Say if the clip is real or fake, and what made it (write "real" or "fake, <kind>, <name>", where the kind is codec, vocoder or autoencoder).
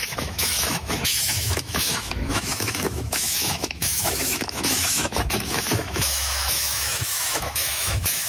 fake, autoencoder, DAC-VAE